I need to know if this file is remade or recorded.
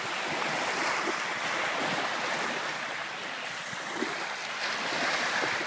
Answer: recorded